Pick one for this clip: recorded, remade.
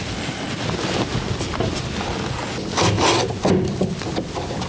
recorded